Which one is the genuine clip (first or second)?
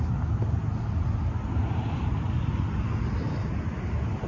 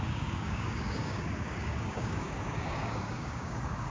first